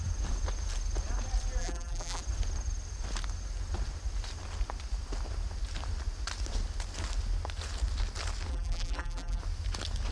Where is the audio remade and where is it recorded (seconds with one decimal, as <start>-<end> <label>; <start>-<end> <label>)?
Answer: 0.0-1.6 recorded; 1.6-2.2 remade; 2.2-8.5 recorded; 8.5-9.4 remade; 9.4-10.1 recorded